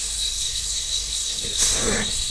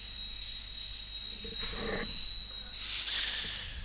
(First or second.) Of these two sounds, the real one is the second